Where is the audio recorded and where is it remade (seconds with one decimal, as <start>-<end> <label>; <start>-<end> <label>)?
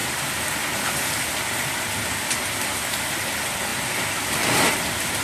0.0-5.2 recorded